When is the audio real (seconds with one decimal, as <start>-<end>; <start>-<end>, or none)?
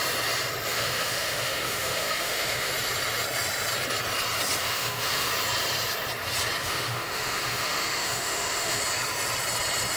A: 0.0-0.7; 2.7-4.6; 5.3-6.6; 8.8-10.0